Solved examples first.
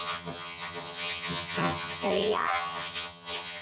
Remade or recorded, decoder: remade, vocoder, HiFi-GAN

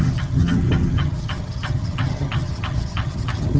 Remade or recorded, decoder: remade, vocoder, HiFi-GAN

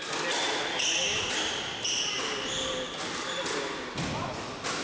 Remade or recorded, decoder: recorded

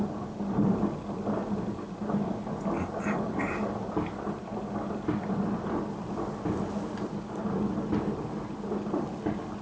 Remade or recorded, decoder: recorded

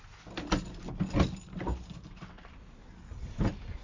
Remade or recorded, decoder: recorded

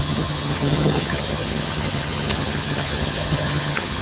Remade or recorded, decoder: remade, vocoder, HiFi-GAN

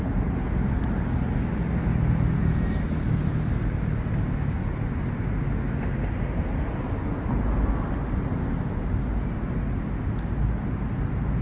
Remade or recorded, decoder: recorded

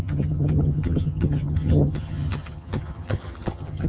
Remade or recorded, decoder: remade, vocoder, HiFi-GAN